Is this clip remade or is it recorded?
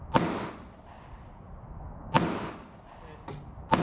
recorded